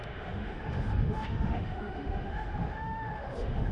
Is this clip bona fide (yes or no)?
no